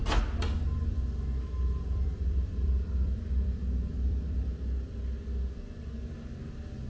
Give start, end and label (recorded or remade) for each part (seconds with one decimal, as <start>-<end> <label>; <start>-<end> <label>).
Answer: 0.0-0.5 recorded; 0.5-4.6 remade; 4.6-6.9 recorded